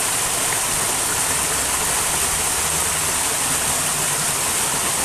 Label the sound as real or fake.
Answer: real